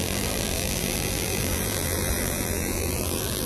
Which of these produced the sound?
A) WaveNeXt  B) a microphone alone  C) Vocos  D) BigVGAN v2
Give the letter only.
D